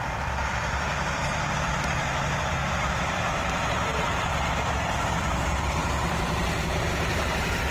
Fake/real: fake